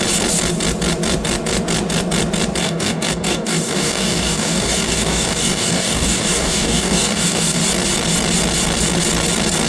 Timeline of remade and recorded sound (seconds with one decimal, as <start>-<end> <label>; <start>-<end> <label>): 0.0-2.6 recorded; 2.6-7.6 remade; 7.6-9.7 recorded